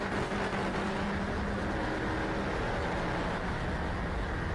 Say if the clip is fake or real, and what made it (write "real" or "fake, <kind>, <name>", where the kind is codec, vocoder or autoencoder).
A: real